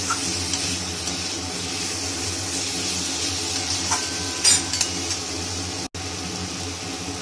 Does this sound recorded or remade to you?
recorded